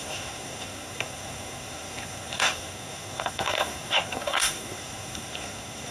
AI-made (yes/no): yes